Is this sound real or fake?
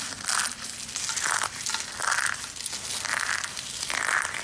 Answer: real